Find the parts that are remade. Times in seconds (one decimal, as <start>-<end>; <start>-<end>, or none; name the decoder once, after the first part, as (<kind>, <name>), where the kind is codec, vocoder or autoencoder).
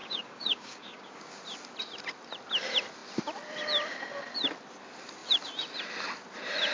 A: 0.0-1.4 (codec, DAC)